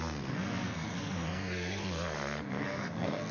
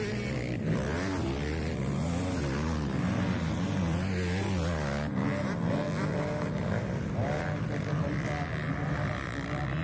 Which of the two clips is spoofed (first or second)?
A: first